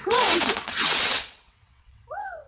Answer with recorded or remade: remade